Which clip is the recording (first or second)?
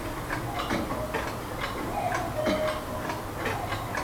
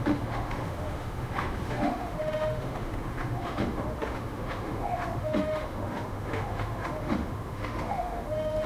first